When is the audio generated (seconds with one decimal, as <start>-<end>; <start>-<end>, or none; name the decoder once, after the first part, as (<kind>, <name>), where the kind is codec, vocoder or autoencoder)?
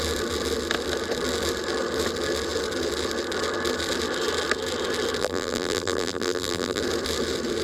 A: 5.2-6.8 (vocoder, BigVGAN v2)